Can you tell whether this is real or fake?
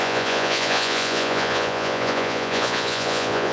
fake